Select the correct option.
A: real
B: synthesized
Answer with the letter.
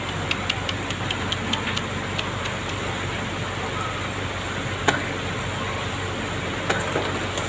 A